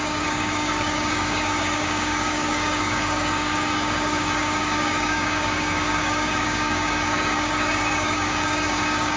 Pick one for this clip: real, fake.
fake